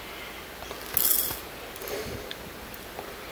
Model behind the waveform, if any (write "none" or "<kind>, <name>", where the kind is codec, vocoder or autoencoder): none